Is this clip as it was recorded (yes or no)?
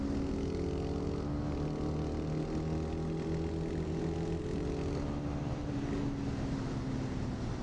yes